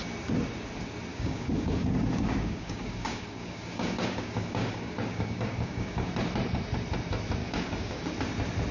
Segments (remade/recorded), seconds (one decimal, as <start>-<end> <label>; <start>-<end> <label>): 0.0-1.1 recorded; 1.1-6.1 remade; 6.1-7.4 recorded; 7.4-8.1 remade; 8.1-8.7 recorded